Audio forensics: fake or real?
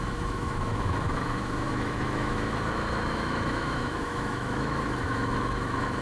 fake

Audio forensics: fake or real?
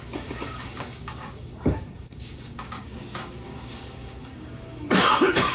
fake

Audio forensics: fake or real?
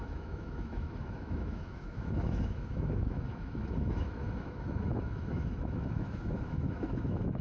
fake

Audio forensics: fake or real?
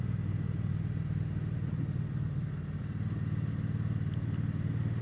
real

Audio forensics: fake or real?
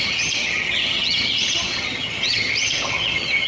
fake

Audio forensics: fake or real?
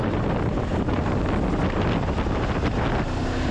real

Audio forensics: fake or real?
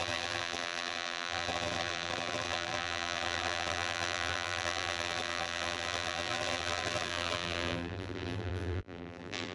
fake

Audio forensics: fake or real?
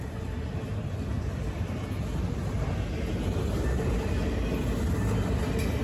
real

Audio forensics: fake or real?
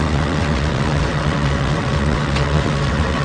fake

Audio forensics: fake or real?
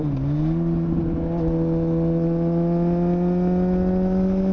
real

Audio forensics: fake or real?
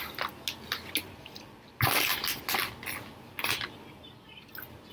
real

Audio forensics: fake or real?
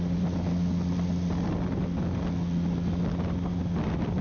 real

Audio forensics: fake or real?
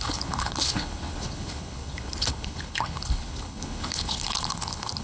fake